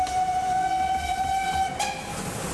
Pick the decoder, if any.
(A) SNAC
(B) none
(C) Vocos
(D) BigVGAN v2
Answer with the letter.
B